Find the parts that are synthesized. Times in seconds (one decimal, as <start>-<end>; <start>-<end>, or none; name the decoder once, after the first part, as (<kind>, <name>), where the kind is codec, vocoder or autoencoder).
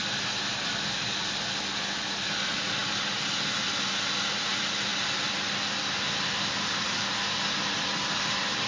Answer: none